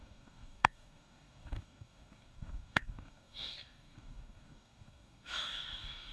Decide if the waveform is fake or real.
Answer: fake